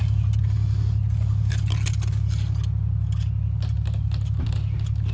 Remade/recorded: recorded